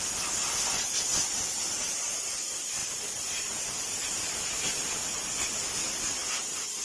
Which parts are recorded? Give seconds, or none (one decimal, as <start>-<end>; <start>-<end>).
0.0-1.1; 2.0-2.8; 4.6-6.8